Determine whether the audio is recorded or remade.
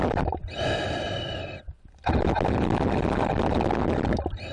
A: recorded